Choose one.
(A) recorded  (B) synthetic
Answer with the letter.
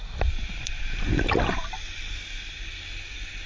A